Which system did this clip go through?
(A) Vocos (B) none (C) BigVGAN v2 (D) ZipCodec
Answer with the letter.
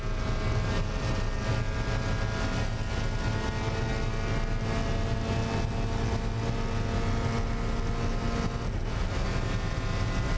B